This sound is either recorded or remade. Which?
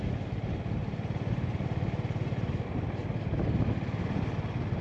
recorded